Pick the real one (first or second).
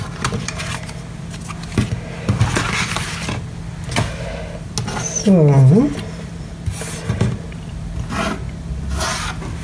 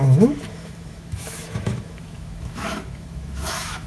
first